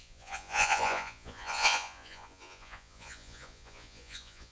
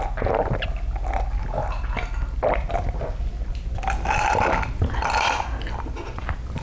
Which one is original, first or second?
second